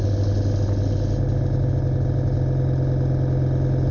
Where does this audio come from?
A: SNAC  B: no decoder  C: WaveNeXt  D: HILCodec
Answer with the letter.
B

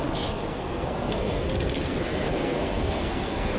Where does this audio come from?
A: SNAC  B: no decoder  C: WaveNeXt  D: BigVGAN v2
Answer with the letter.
A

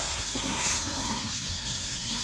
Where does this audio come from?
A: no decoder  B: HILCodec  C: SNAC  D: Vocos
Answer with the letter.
C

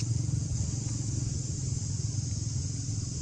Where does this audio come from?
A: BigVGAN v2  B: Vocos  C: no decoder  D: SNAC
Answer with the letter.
C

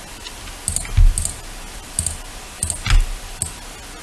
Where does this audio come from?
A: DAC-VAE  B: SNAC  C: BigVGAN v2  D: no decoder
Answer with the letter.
D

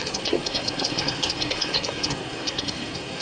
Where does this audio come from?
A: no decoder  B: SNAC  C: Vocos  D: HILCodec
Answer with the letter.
B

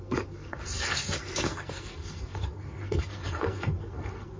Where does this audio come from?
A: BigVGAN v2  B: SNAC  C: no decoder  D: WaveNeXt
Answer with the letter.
B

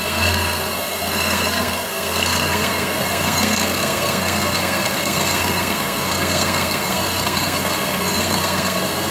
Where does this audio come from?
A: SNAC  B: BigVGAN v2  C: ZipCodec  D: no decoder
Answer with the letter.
A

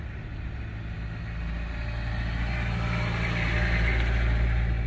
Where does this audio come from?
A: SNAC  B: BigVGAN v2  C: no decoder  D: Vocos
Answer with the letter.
C